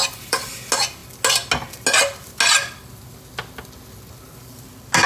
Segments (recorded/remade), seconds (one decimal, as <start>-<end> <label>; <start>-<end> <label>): 0.0-0.5 remade; 0.5-5.1 recorded